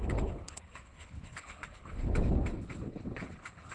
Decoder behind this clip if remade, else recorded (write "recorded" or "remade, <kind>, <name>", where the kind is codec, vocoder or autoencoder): remade, codec, HILCodec